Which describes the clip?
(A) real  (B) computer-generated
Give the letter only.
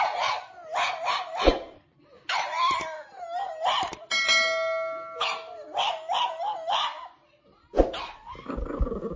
A